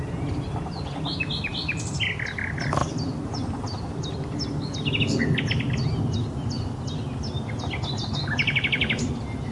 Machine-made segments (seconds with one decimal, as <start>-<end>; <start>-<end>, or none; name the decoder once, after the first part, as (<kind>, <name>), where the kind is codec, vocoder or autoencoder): none